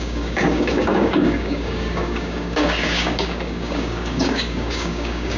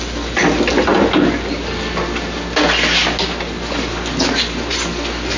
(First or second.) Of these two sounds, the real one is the second